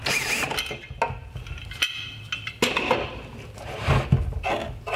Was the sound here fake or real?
real